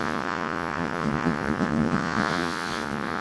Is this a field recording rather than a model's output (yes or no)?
no